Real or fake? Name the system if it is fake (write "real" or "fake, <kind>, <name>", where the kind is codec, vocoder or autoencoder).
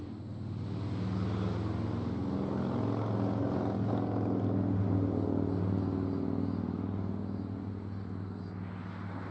real